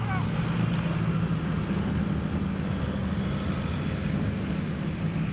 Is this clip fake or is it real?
real